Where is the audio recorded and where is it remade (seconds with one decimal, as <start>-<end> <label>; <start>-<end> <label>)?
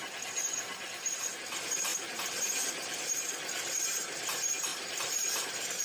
0.0-1.9 recorded; 1.9-3.3 remade; 3.3-4.7 recorded; 4.7-5.8 remade